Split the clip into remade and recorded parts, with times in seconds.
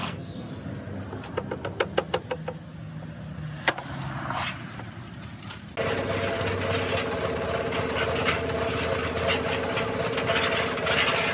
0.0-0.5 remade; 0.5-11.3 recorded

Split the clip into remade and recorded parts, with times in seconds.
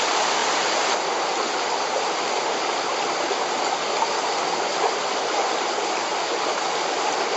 0.0-7.4 recorded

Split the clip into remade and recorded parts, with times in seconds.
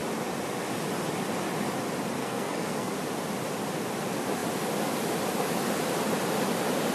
0.0-2.2 recorded; 2.2-2.9 remade; 2.9-6.9 recorded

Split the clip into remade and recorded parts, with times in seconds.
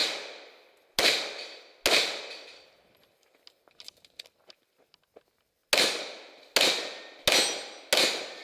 0.0-8.4 recorded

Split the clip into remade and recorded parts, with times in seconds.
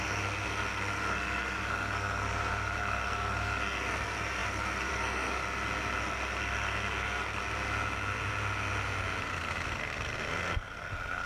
0.0-5.4 remade; 5.4-6.0 recorded; 6.0-7.4 remade; 7.4-9.2 recorded; 9.2-11.3 remade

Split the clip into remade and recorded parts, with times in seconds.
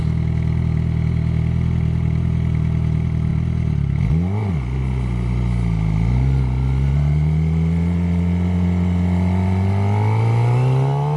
0.0-11.2 recorded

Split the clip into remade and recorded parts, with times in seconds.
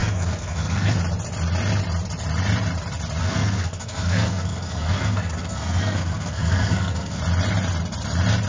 0.0-1.0 remade; 1.0-3.2 recorded; 3.2-7.2 remade; 7.2-8.5 recorded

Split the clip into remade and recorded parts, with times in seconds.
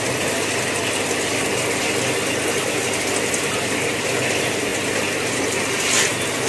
0.0-6.5 recorded